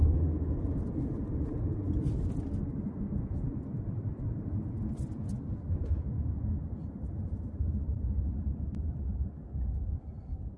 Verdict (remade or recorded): recorded